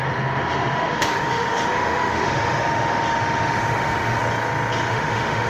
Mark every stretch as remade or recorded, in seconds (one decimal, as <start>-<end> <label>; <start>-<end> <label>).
0.0-4.2 remade; 4.2-4.9 recorded; 4.9-5.5 remade